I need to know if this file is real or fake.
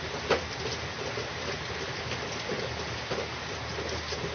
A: real